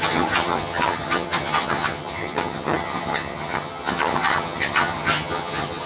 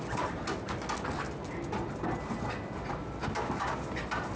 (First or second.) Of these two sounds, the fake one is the first